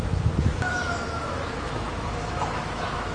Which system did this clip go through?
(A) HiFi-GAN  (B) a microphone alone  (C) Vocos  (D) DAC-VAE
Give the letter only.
D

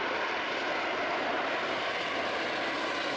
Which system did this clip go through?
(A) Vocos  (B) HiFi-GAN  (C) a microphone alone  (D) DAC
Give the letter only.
C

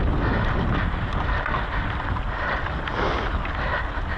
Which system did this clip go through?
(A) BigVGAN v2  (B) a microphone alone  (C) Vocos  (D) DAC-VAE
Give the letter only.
B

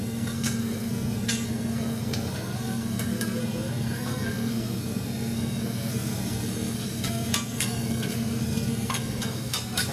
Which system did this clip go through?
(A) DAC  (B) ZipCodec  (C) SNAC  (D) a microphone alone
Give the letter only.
C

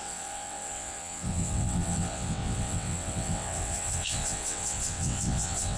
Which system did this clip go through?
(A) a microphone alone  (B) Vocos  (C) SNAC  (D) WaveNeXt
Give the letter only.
D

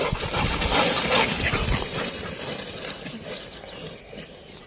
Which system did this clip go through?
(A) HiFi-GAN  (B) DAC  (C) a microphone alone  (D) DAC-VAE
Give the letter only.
C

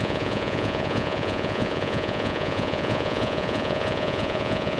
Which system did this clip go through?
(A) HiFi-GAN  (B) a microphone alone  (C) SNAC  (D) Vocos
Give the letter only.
D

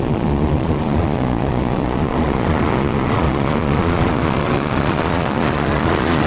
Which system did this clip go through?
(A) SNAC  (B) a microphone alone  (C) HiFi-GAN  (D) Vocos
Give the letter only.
D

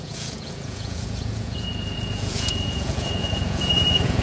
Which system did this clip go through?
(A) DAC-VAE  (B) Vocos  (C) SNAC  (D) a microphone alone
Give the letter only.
B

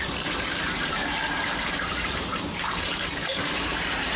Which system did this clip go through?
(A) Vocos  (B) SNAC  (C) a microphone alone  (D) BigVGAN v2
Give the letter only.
D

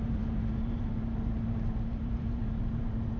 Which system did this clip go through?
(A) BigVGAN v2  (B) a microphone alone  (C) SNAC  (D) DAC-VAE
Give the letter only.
A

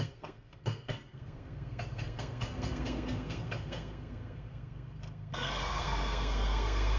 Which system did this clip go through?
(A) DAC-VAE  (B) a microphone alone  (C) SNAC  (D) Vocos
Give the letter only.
C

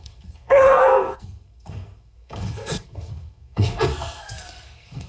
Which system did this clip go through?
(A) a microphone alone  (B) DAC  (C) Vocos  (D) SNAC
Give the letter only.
D